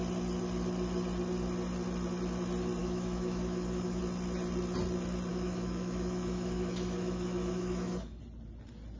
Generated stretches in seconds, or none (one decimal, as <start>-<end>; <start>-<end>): 2.8-4.0; 5.3-8.2